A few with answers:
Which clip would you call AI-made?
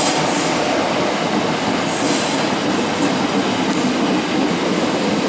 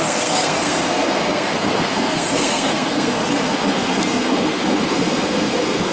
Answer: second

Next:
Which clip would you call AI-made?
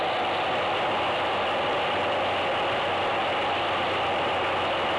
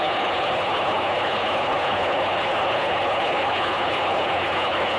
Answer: second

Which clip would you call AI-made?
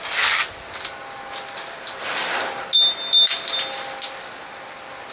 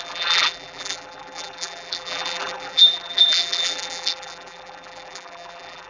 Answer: second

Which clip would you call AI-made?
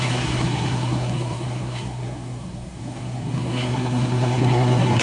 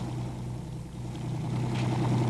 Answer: first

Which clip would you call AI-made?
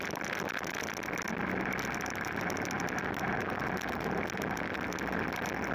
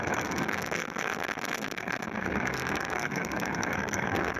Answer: second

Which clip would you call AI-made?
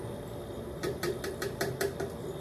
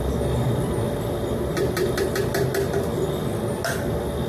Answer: first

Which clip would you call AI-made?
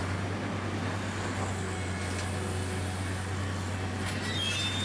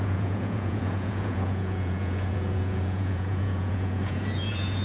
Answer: second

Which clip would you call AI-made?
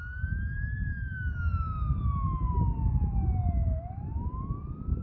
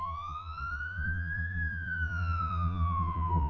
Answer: second